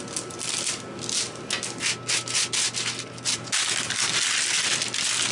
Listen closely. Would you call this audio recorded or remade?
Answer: recorded